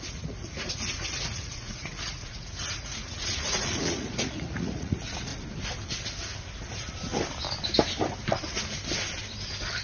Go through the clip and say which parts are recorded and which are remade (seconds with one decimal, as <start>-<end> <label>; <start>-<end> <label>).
0.0-5.3 remade; 5.3-9.8 recorded